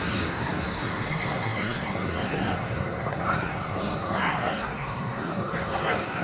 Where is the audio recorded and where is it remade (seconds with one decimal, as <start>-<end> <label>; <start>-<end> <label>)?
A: 0.0-6.2 remade